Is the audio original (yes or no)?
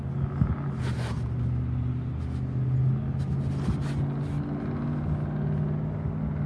yes